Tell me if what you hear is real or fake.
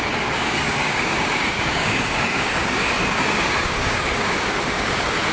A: fake